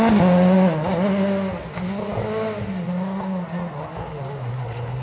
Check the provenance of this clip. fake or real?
real